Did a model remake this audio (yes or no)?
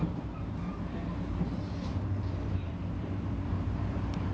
yes